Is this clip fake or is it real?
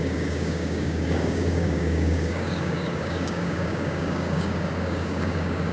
fake